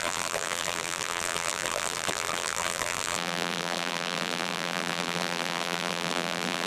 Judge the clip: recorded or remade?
remade